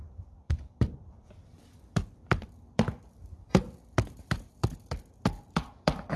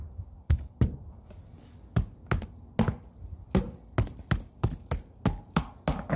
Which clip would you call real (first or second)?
second